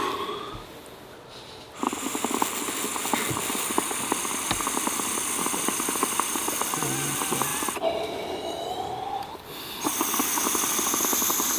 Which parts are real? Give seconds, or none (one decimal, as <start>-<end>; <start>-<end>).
0.0-11.6